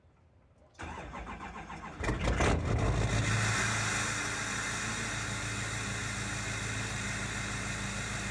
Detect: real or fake real